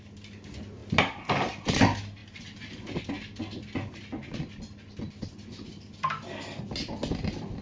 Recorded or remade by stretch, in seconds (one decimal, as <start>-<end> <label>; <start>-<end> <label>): 0.0-7.6 recorded